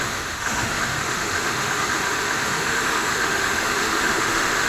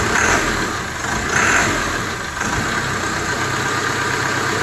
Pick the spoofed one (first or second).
first